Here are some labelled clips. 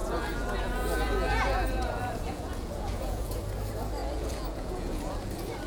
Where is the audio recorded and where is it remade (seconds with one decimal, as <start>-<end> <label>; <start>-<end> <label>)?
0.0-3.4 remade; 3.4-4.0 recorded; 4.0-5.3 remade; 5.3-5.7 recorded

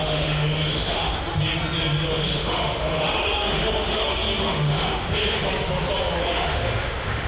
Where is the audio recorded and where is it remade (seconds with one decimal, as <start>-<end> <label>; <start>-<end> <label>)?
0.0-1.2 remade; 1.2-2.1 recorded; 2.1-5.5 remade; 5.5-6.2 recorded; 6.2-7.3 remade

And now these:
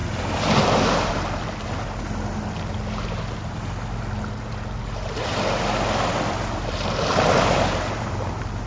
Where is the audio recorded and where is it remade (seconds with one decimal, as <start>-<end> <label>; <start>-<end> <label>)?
0.0-8.7 recorded